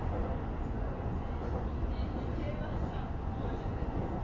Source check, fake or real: fake